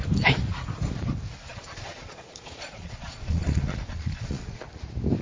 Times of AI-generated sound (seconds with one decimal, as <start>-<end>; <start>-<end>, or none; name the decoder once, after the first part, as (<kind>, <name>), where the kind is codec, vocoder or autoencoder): 1.5-4.6 (vocoder, Vocos)